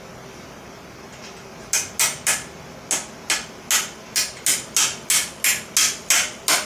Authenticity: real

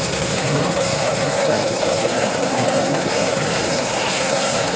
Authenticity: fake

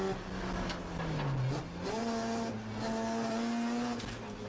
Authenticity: real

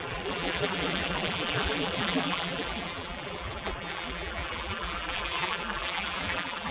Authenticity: fake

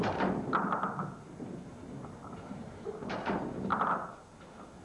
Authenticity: real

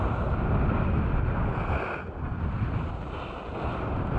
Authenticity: real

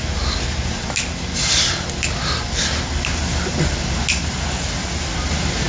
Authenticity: real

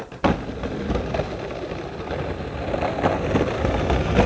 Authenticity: real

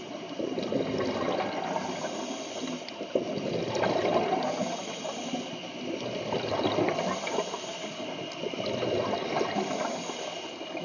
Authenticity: real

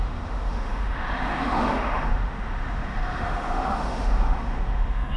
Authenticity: fake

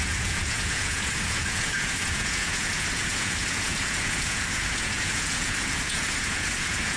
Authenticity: fake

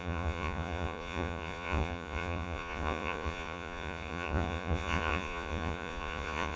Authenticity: fake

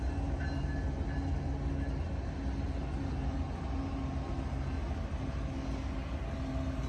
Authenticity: real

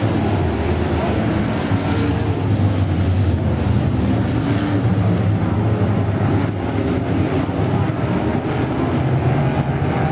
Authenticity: real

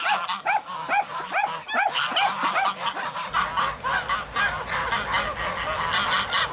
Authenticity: real